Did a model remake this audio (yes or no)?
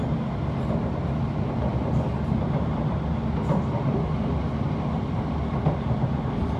no